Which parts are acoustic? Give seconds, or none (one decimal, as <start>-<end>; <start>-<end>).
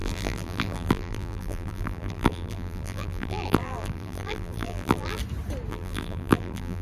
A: 5.2-5.7